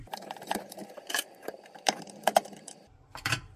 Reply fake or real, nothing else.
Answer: fake